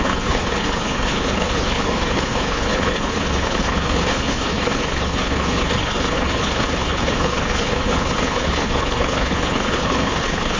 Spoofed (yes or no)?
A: yes